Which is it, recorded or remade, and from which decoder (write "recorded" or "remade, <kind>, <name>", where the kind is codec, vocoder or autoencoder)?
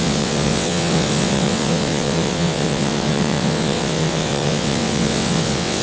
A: remade, vocoder, WaveNeXt